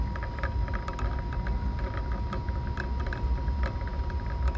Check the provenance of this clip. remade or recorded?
recorded